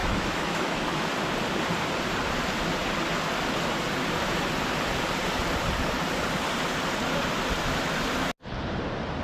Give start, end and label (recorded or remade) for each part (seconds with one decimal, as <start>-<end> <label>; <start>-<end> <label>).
0.0-1.1 remade; 1.1-9.2 recorded